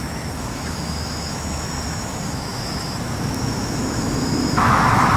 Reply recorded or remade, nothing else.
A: remade